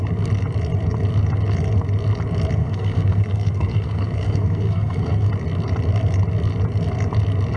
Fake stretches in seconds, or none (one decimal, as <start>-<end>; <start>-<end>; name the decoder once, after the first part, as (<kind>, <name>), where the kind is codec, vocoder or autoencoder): 2.6-5.3 (codec, SNAC)